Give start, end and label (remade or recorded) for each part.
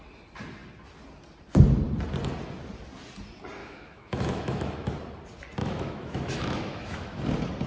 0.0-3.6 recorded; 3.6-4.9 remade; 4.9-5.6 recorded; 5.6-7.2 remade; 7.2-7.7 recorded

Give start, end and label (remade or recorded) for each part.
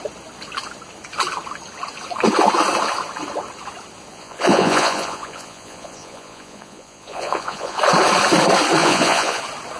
0.0-4.1 recorded; 4.1-7.8 remade; 7.8-8.8 recorded; 8.8-9.4 remade; 9.4-9.8 recorded